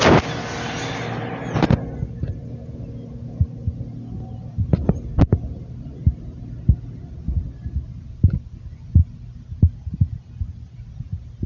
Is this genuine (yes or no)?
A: yes